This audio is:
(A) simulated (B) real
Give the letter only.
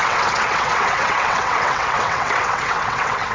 A